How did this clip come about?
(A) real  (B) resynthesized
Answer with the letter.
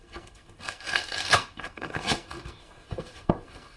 B